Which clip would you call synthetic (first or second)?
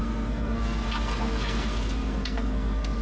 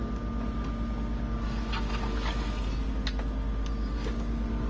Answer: first